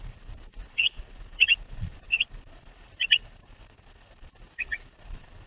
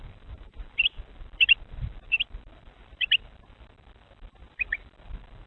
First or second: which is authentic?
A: second